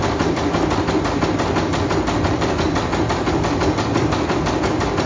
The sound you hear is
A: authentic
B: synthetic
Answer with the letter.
A